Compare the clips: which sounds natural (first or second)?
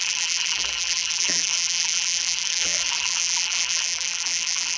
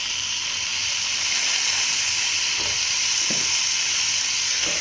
second